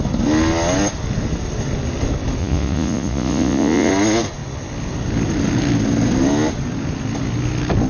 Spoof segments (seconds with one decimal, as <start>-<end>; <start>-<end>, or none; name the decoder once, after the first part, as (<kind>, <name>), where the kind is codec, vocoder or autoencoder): 2.4-3.9 (vocoder, Vocos)